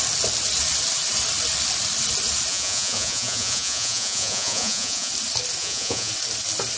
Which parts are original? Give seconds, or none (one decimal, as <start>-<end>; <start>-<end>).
0.0-2.5; 5.1-5.6; 6.1-6.8